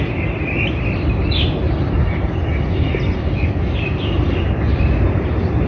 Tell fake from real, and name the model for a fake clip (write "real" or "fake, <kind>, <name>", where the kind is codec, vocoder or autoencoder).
real